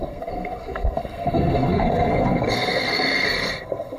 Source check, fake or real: fake